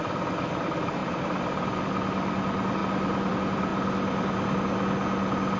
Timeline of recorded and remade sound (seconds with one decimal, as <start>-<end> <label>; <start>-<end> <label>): 0.0-1.0 recorded; 1.0-1.8 remade; 1.8-5.6 recorded